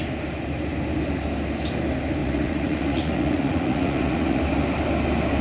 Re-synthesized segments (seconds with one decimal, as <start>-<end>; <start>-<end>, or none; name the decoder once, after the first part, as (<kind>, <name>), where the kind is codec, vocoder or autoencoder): 2.2-4.4 (vocoder, Vocos)